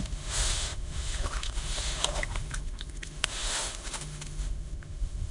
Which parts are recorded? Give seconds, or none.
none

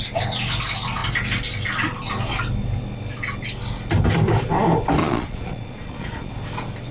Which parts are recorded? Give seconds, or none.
0.0-5.0; 6.3-6.9

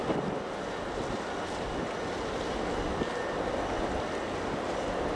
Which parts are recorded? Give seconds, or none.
0.0-5.2

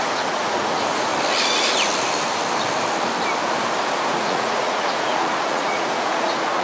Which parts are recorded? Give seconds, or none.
1.1-4.1

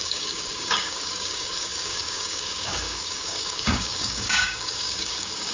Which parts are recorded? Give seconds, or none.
none

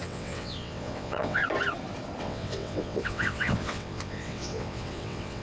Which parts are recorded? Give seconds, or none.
1.4-2.2

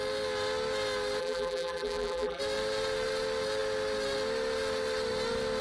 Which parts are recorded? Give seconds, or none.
0.0-1.2; 2.4-5.6